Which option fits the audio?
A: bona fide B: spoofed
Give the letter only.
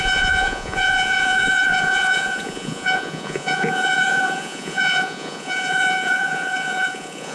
B